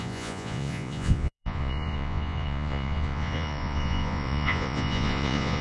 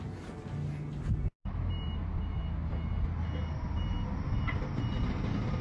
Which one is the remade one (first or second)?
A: first